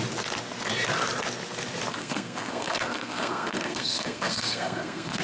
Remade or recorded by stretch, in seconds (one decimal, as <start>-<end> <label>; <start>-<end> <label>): 0.0-1.9 recorded; 1.9-5.2 remade